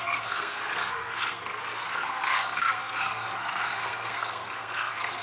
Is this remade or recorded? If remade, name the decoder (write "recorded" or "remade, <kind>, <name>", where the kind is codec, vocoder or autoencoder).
remade, codec, SNAC